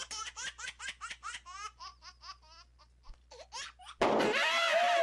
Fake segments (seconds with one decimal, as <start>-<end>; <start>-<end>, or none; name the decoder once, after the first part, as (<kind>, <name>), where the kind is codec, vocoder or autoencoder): 0.0-1.9 (vocoder, BigVGAN v2)